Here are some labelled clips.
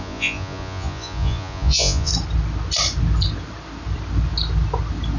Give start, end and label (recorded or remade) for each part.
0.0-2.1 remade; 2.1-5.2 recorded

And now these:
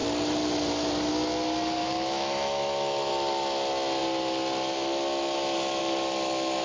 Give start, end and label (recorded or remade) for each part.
0.0-1.8 recorded; 1.8-3.1 remade; 3.1-6.6 recorded

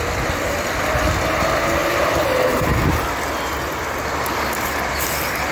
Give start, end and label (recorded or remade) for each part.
0.0-1.8 recorded; 1.8-2.8 remade; 2.8-5.5 recorded

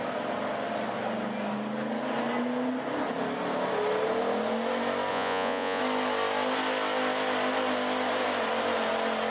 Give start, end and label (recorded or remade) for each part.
0.0-5.1 recorded; 5.1-5.8 remade; 5.8-9.3 recorded

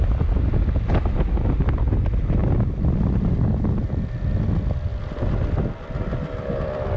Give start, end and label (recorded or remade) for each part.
0.0-7.0 recorded

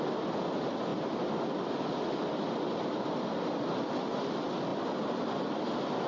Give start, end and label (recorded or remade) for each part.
0.0-6.1 recorded